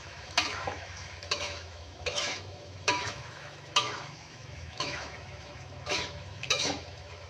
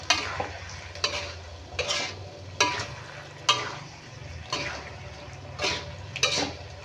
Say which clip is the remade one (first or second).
first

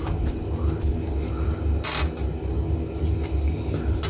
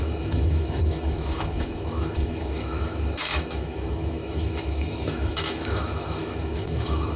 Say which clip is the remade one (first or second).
second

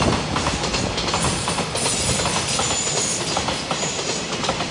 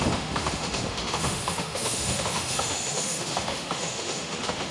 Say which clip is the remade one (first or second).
second